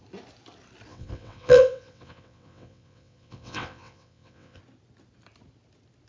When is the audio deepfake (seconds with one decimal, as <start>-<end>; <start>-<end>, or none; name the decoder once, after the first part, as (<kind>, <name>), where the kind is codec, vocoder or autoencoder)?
0.9-4.6 (vocoder, WaveNeXt)